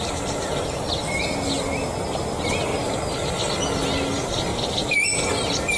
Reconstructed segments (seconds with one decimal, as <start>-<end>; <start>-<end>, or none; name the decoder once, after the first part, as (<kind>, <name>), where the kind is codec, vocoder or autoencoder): none